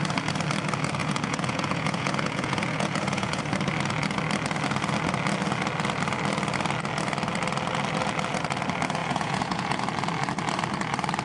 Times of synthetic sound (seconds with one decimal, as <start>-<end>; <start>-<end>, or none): 1.0-3.4; 9.0-9.8